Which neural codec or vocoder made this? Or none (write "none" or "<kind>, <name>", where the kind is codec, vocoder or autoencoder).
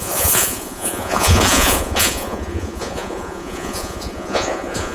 vocoder, Vocos